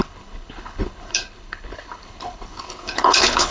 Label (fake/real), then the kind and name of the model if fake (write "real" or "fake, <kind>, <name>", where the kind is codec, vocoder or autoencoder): fake, codec, HILCodec